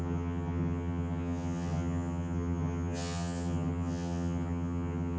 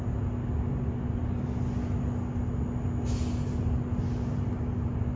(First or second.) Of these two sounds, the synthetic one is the first